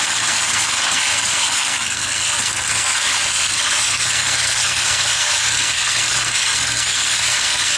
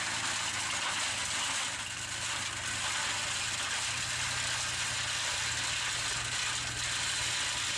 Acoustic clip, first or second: second